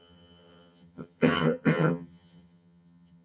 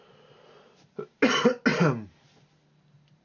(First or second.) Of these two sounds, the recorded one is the second